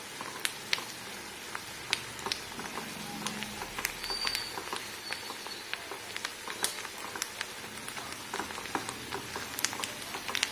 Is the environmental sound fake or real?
real